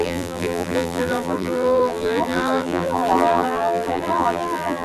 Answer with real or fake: fake